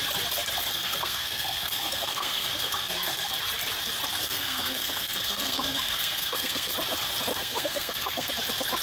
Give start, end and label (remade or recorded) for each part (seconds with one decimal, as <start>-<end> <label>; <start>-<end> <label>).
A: 0.0-0.7 recorded; 0.7-3.3 remade; 3.3-4.1 recorded; 4.1-6.7 remade; 6.7-7.3 recorded; 7.3-8.3 remade; 8.3-8.8 recorded